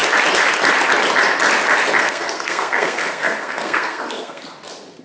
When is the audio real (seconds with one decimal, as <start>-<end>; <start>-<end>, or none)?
0.0-2.0; 4.4-5.0